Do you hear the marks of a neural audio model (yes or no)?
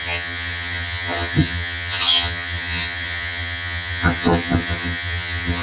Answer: yes